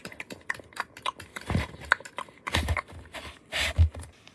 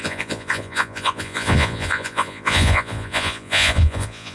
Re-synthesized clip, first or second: second